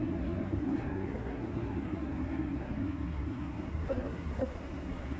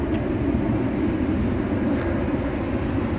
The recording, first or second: second